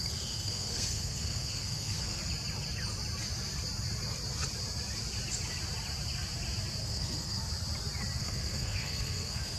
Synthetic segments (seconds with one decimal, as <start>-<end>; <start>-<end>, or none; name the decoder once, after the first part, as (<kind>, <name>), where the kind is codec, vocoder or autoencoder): 0.0-2.2 (codec, SNAC); 6.8-7.4; 8.2-9.6

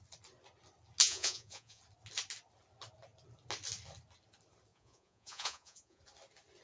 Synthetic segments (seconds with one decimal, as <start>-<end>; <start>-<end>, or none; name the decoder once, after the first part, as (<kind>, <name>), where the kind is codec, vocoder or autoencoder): 1.0-1.8 (vocoder, Vocos); 4.7-6.0